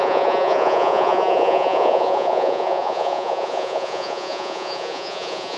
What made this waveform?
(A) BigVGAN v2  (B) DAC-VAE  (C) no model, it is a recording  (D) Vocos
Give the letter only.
D